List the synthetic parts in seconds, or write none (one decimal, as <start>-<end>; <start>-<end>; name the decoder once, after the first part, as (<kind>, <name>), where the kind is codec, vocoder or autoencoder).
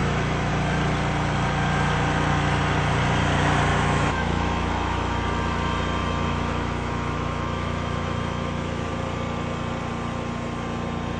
0.0-0.5 (autoencoder, DAC-VAE); 3.7-5.2; 6.0-8.9